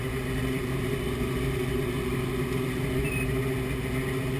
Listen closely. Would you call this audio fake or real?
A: real